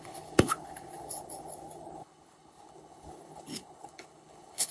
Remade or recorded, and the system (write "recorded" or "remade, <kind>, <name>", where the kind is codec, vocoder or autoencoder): remade, codec, HILCodec